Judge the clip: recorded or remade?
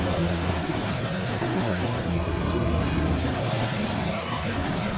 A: remade